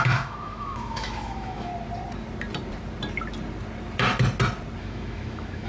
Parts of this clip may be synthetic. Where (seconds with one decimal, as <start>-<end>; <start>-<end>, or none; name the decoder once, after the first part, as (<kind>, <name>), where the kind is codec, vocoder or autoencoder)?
0.0-1.7 (autoencoder, DAC-VAE); 4.8-5.7